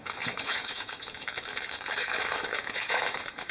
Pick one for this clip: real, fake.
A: fake